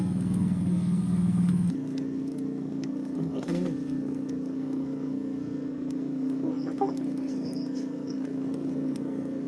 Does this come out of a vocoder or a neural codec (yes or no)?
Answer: yes